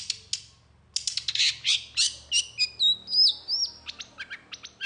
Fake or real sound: real